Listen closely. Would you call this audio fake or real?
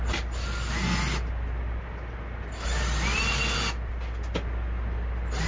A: real